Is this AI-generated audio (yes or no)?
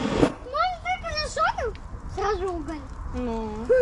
no